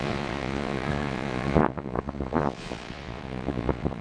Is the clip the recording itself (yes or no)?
no